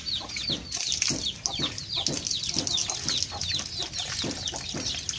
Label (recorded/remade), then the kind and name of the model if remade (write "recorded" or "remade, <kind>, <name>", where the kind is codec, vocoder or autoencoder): recorded